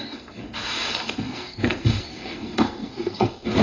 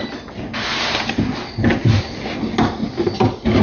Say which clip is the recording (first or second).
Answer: second